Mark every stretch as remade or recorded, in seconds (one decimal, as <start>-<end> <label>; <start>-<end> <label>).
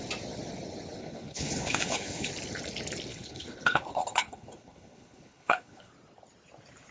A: 0.0-1.0 recorded; 1.0-2.3 remade; 2.3-3.1 recorded; 3.1-5.9 remade; 5.9-6.9 recorded